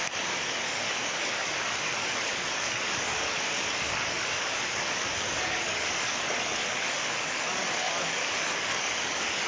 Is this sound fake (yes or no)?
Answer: yes